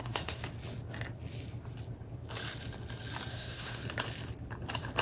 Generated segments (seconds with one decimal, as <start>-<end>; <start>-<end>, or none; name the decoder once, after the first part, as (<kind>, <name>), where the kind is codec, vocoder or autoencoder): 0.0-0.4 (codec, SNAC); 3.3-3.8